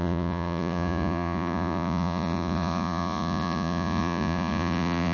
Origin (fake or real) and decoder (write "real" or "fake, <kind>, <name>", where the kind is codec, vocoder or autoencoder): fake, vocoder, Vocos